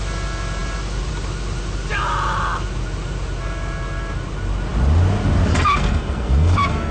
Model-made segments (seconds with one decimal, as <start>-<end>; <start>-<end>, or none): 5.5-6.9